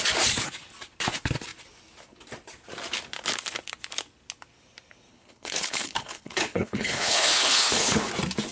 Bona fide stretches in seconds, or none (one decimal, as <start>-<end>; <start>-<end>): 0.0-5.1; 8.1-8.5